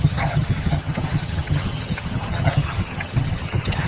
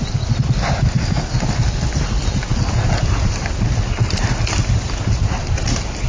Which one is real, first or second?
second